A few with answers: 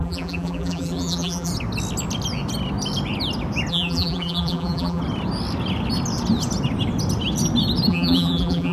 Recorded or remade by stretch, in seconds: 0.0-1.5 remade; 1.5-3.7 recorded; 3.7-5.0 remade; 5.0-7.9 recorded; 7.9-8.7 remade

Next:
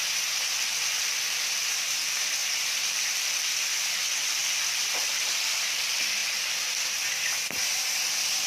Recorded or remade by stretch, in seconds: 0.0-2.4 recorded; 2.4-3.7 remade; 3.7-8.5 recorded

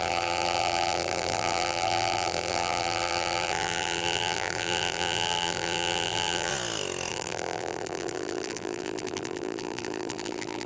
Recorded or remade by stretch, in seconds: 0.0-6.5 remade; 6.5-7.1 recorded; 7.1-10.7 remade

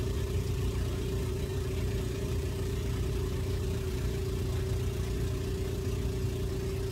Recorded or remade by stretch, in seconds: 0.0-4.2 remade; 4.2-6.9 recorded

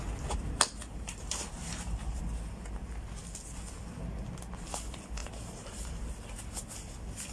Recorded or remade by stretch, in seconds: 0.0-0.7 recorded; 0.7-2.2 remade; 2.2-5.2 recorded; 5.2-6.1 remade; 6.1-7.3 recorded

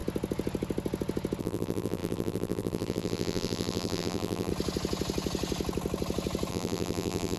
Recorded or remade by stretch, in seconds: 0.0-1.4 recorded; 1.4-4.5 remade; 4.5-6.5 recorded; 6.5-7.4 remade

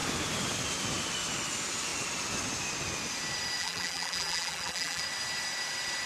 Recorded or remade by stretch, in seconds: 0.0-3.6 recorded; 3.6-5.0 remade; 5.0-6.1 recorded

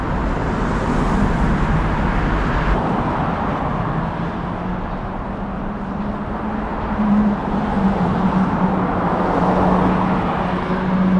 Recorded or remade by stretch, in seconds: 0.0-0.4 recorded; 0.4-2.0 remade; 2.0-5.6 recorded; 5.6-6.1 remade; 6.1-6.7 recorded; 6.7-8.8 remade; 8.8-11.2 recorded